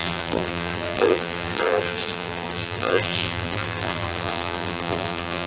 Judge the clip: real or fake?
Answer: fake